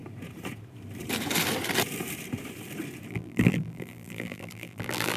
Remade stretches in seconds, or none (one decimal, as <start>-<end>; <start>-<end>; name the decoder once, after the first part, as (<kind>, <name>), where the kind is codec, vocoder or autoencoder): 3.1-5.2 (vocoder, BigVGAN v2)